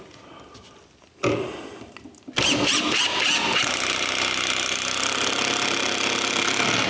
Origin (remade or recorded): recorded